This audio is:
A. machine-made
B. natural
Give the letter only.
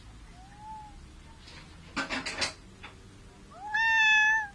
B